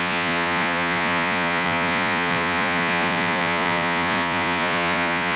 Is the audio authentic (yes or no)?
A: no